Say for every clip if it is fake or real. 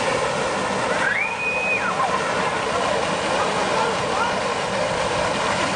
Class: real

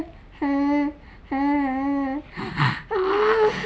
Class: real